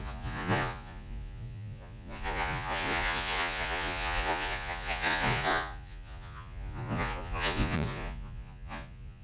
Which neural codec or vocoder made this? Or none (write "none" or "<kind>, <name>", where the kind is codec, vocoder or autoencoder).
vocoder, Vocos